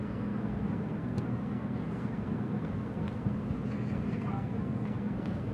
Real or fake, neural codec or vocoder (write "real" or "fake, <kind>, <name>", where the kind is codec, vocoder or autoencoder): fake, codec, SNAC